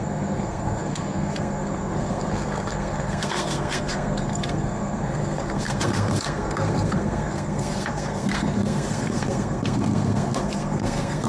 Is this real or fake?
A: fake